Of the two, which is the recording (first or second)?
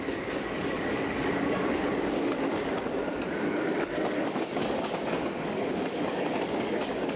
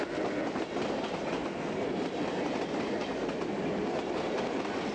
second